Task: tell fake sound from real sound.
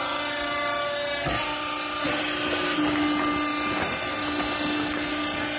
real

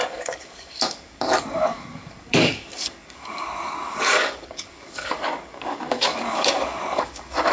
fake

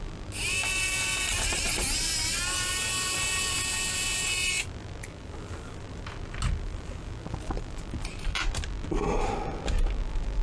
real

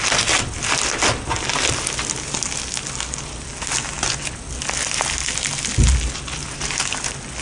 real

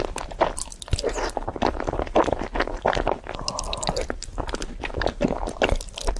real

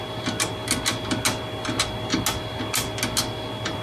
real